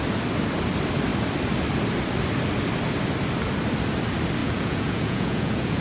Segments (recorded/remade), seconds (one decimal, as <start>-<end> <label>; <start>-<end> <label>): 0.0-4.4 recorded; 4.4-5.8 remade